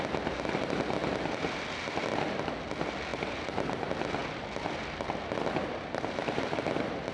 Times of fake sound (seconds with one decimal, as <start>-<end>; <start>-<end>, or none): 1.0-1.6; 3.1-3.7; 4.2-5.2